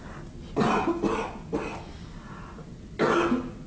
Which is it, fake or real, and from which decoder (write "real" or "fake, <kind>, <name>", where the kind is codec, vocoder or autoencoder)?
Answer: real